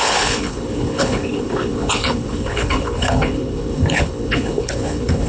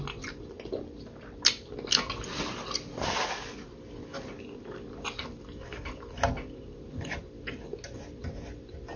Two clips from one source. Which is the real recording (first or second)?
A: second